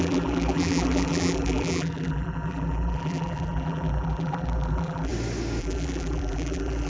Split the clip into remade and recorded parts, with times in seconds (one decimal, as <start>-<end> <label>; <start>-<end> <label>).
0.0-5.1 remade; 5.1-5.6 recorded; 5.6-6.9 remade